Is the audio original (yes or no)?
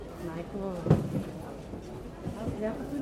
yes